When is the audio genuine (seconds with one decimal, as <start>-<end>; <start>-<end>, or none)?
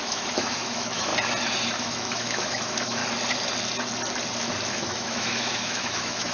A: 1.1-1.8; 3.0-4.7